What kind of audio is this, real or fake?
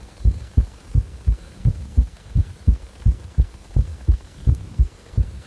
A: fake